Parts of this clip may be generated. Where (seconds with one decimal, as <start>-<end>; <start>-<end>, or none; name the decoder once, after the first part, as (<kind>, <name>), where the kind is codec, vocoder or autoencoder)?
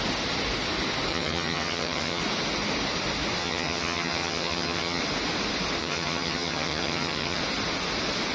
1.1-2.2 (vocoder, HiFi-GAN); 3.4-5.0; 5.8-7.4